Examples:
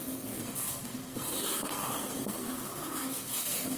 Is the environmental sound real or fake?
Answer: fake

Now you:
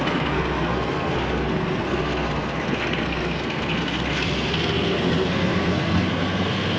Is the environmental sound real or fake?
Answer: fake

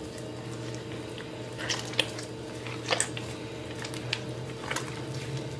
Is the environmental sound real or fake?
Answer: real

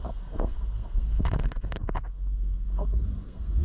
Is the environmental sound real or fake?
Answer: fake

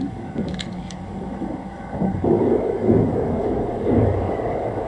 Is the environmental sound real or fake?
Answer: fake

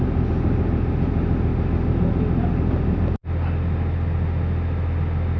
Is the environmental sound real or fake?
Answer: real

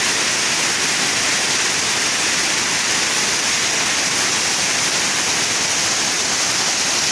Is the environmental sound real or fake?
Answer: real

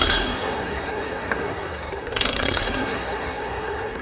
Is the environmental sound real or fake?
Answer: fake